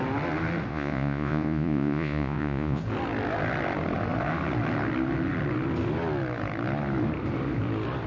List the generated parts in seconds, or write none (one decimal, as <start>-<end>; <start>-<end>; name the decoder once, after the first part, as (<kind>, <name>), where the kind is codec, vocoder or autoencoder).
0.7-2.8 (vocoder, Vocos)